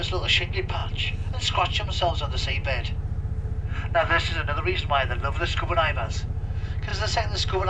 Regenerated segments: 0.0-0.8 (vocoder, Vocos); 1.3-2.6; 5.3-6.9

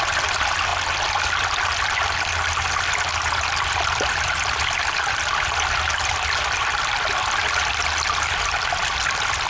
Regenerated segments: none